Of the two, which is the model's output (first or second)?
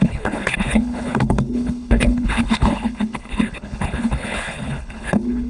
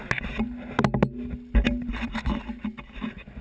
first